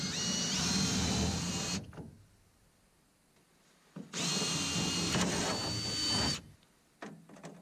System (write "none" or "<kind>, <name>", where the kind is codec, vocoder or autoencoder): none